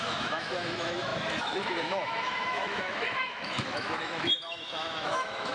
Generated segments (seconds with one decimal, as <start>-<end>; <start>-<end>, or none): 0.0-5.5